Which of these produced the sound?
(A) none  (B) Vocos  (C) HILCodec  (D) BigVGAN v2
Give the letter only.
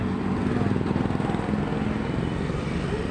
D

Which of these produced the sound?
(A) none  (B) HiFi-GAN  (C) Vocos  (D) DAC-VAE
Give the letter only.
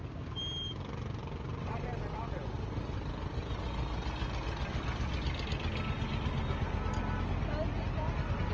A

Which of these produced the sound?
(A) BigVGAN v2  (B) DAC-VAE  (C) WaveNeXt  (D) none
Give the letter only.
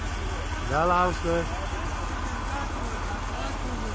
D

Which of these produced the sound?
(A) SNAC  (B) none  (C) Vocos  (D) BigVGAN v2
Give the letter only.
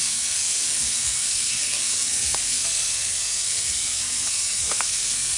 A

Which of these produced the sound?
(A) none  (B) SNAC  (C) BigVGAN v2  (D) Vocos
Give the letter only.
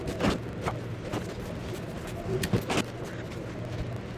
A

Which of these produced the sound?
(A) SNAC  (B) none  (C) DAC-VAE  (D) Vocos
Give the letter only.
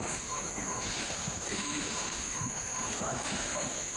C